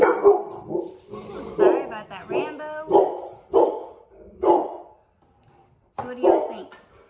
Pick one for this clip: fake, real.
real